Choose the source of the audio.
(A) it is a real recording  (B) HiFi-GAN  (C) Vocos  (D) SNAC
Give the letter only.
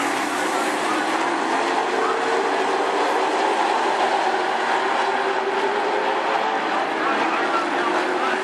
A